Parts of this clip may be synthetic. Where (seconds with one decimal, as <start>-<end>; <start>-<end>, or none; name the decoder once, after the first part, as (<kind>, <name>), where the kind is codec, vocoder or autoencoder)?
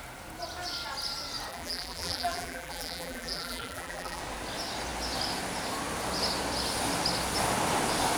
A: 1.5-4.2 (vocoder, BigVGAN v2)